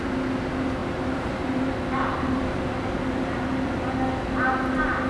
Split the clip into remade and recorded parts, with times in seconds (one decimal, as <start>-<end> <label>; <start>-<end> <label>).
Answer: 0.0-0.8 recorded; 0.8-3.7 remade; 3.7-5.1 recorded